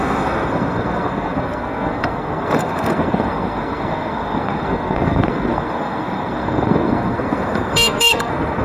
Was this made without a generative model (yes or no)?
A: no